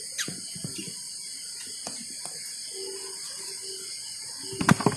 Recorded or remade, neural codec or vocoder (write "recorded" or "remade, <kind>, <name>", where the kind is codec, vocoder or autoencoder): recorded